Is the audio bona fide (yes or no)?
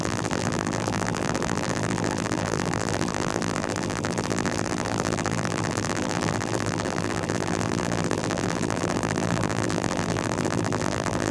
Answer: no